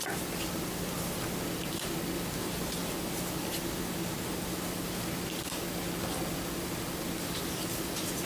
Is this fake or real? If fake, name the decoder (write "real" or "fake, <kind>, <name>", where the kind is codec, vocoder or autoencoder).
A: real